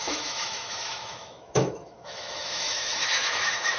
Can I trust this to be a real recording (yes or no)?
no